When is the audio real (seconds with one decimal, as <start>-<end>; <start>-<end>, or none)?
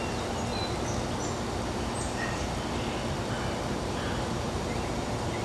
0.5-3.7